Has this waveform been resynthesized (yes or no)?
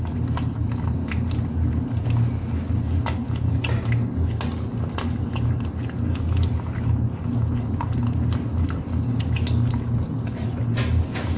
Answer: no